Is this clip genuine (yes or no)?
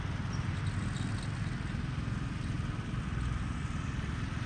yes